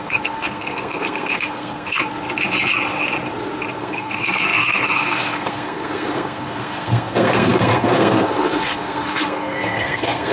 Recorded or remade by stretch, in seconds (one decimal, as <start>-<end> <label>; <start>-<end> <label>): 0.0-2.0 remade; 2.0-3.8 recorded; 3.8-10.3 remade